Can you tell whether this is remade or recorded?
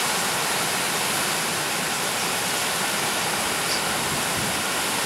recorded